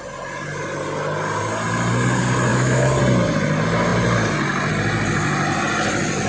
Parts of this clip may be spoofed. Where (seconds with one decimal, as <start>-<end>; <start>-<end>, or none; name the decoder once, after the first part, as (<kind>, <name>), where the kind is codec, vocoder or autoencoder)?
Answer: 2.5-3.0 (autoencoder, DAC-VAE)